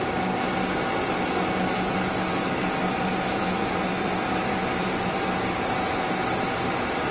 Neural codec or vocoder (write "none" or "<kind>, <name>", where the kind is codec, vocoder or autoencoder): none